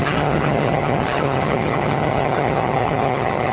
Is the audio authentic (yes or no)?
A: no